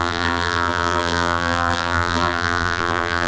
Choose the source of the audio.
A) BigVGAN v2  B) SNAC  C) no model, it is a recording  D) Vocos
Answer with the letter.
A